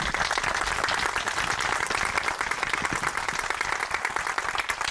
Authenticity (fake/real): real